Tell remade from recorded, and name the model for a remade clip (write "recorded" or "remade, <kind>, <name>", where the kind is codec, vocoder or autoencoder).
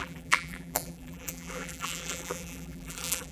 remade, vocoder, BigVGAN v2